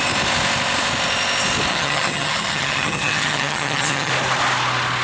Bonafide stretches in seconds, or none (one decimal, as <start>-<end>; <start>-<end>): 0.0-1.7; 4.1-5.0